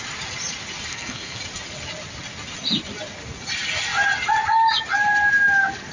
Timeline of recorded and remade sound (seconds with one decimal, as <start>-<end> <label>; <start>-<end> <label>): 0.0-0.9 recorded; 0.9-1.4 remade; 1.4-5.9 recorded